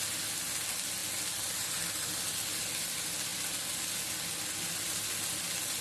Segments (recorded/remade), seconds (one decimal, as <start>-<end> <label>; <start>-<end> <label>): 0.0-5.8 recorded